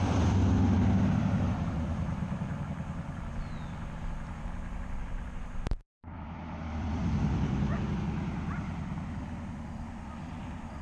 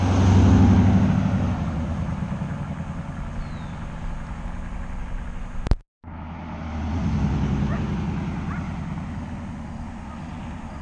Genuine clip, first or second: second